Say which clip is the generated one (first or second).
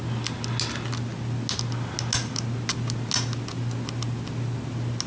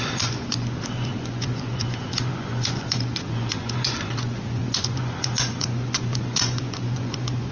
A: second